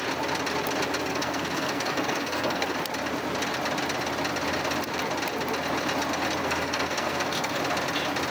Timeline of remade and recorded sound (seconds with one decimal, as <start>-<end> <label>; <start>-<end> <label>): 0.0-1.1 recorded; 1.1-2.7 remade; 2.7-6.4 recorded; 6.4-7.6 remade; 7.6-8.3 recorded